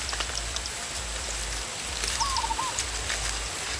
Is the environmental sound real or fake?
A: real